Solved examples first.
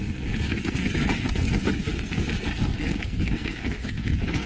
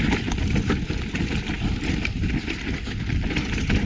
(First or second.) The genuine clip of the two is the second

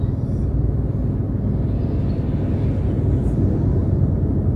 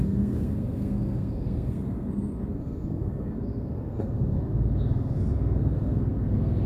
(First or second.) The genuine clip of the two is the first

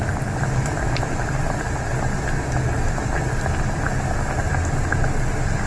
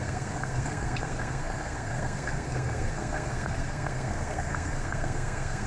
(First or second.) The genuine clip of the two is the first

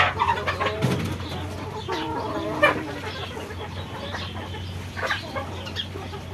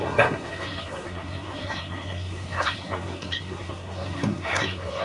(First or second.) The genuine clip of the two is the first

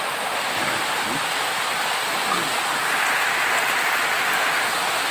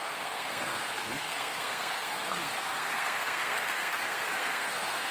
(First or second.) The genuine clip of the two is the first